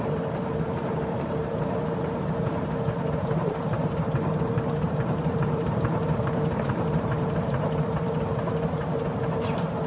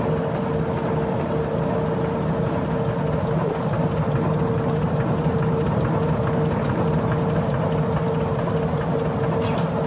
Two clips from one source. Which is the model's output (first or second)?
first